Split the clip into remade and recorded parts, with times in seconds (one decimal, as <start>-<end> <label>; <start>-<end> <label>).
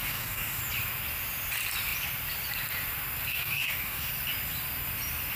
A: 0.0-0.6 remade; 0.6-3.3 recorded; 3.3-4.1 remade; 4.1-5.4 recorded